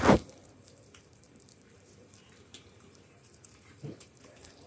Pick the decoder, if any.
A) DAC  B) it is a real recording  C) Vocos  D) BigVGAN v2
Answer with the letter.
D